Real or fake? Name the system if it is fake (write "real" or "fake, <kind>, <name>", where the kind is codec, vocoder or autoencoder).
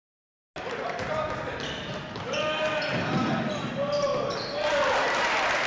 real